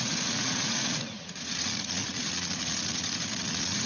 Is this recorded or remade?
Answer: remade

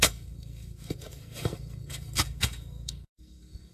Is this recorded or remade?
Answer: remade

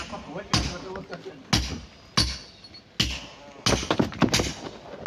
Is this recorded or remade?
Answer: recorded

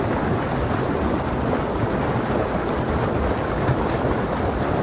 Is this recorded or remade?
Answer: recorded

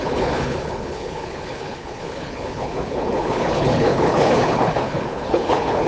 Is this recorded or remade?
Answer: remade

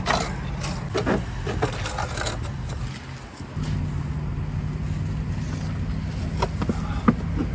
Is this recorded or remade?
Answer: recorded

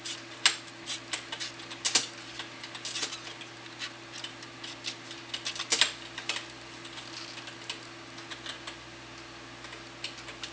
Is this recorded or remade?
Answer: recorded